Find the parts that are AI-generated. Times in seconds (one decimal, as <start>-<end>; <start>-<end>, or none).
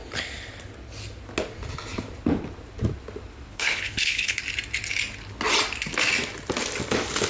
3.5-4.4